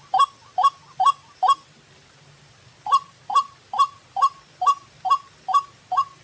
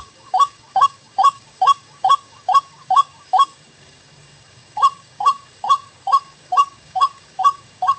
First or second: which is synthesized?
second